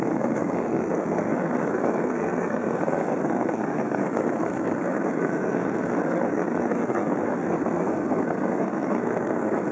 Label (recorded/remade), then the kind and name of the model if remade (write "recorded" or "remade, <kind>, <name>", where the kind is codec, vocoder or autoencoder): remade, codec, SNAC